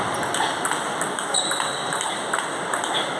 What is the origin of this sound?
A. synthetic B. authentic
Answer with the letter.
B